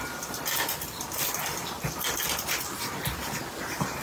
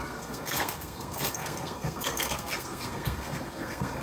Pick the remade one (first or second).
second